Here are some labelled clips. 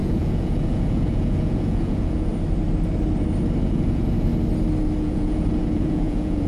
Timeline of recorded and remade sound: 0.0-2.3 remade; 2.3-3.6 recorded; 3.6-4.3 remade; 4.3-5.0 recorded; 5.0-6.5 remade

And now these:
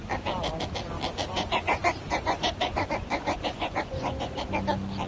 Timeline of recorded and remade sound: 0.0-1.3 recorded; 1.3-4.4 remade; 4.4-5.1 recorded

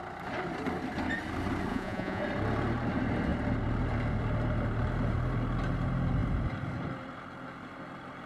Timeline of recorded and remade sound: 0.0-1.7 recorded; 1.7-2.2 remade; 2.2-8.3 recorded

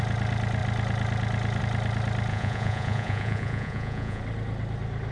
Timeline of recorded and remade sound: 0.0-2.3 recorded; 2.3-4.2 remade; 4.2-5.1 recorded